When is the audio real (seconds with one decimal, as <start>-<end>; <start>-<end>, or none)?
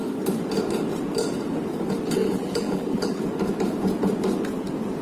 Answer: 0.0-2.2; 3.2-5.0